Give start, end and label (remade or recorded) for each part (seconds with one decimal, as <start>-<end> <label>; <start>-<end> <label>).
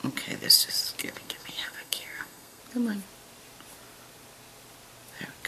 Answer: 0.0-1.0 recorded; 1.0-2.6 remade; 2.6-5.5 recorded